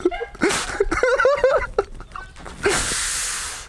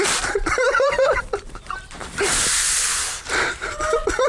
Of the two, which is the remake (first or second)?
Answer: second